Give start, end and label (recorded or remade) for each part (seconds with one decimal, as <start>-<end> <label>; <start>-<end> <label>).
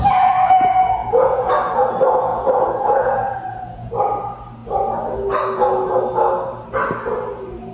0.0-1.0 recorded; 1.0-1.5 remade; 1.5-2.3 recorded; 2.3-3.9 remade; 3.9-7.7 recorded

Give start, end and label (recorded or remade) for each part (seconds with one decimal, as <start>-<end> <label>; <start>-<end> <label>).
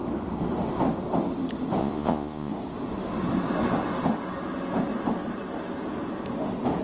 0.0-1.8 recorded; 1.8-2.5 remade; 2.5-6.8 recorded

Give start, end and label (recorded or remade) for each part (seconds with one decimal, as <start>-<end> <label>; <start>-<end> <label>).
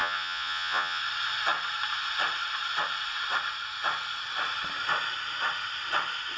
0.0-1.0 remade; 1.0-6.4 recorded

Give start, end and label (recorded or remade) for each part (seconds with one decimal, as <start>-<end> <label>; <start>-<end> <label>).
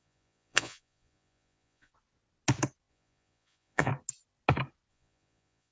0.0-1.9 remade; 1.9-2.9 recorded; 2.9-3.9 remade; 3.9-4.9 recorded; 4.9-5.7 remade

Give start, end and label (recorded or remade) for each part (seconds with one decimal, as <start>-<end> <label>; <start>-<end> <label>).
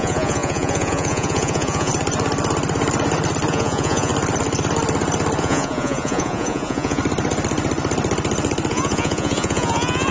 0.0-1.9 remade; 1.9-3.5 recorded; 3.5-4.1 remade; 4.1-5.4 recorded; 5.4-7.0 remade; 7.0-8.7 recorded; 8.7-10.1 remade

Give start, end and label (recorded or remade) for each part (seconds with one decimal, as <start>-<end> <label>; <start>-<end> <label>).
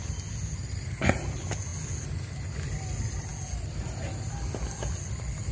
0.0-5.5 recorded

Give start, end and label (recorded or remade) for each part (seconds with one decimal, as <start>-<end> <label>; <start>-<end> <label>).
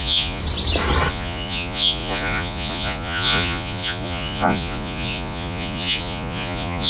0.0-0.4 remade; 0.4-1.1 recorded; 1.1-6.9 remade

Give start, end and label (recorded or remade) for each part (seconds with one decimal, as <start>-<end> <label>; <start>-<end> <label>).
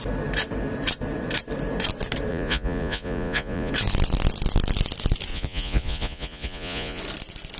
0.0-2.3 recorded; 2.3-3.7 remade; 3.7-5.3 recorded; 5.3-7.0 remade; 7.0-7.6 recorded